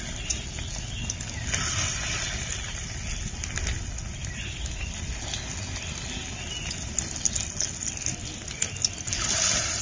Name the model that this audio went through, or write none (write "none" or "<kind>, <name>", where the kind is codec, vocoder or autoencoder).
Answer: none